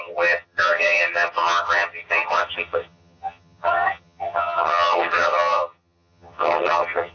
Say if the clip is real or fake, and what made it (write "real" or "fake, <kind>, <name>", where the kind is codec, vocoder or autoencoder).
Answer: fake, vocoder, HiFi-GAN